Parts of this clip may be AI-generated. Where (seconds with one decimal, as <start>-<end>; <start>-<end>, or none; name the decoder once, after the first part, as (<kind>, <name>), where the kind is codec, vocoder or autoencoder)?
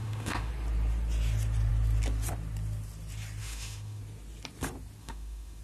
0.0-0.5 (autoencoder, DAC-VAE); 3.4-4.0; 5.0-5.6